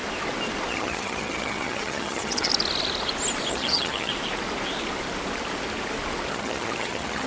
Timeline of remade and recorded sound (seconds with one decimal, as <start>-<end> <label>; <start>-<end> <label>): 0.0-0.7 recorded; 0.7-2.5 remade; 2.5-3.5 recorded; 3.5-4.1 remade; 4.1-6.3 recorded; 6.3-7.3 remade

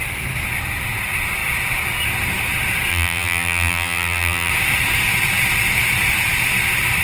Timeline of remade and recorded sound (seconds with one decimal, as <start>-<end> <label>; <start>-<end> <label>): 0.0-2.9 recorded; 2.9-4.5 remade; 4.5-7.0 recorded